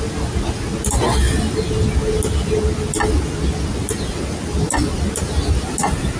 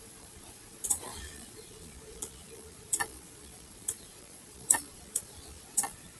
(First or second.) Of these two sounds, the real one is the first